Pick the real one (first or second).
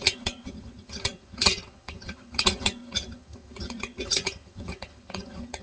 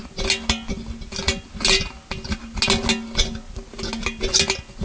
second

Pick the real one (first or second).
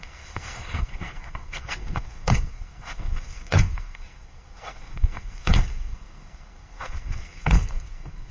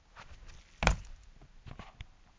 second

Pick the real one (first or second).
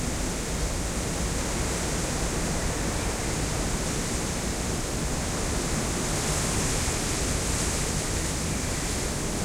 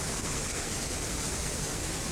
first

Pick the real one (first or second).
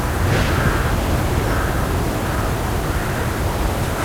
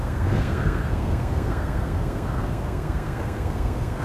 first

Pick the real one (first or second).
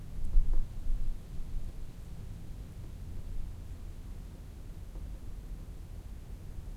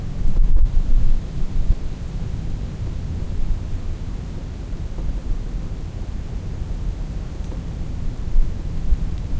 first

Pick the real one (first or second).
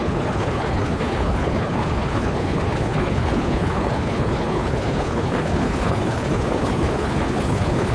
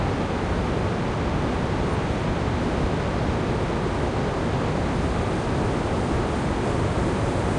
second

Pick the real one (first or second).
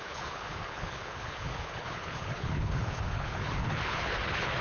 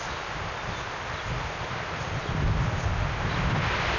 second